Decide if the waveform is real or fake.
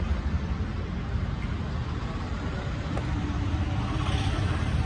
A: real